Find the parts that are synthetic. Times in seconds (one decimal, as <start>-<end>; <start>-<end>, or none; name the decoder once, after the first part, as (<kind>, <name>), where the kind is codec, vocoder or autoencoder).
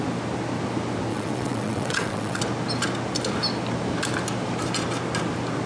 1.1-2.4 (vocoder, WaveNeXt)